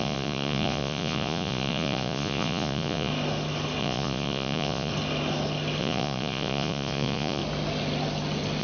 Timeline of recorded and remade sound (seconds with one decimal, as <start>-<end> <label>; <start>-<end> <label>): 0.0-3.1 remade; 3.1-3.8 recorded; 3.8-4.9 remade; 4.9-5.8 recorded; 5.8-7.4 remade; 7.4-8.6 recorded